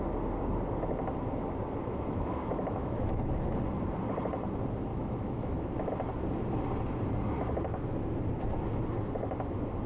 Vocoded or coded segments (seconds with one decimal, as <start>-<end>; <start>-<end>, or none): 1.8-3.3; 4.9-5.9